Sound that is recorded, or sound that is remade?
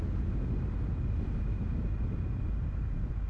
recorded